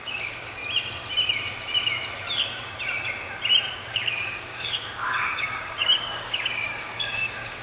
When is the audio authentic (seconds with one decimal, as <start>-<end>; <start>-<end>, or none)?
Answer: 0.6-3.7